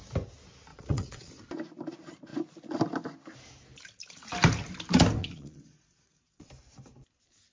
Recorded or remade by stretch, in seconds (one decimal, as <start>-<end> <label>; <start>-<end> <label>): 0.0-0.7 recorded; 0.7-1.3 remade; 1.3-5.2 recorded; 5.2-6.5 remade; 6.5-7.5 recorded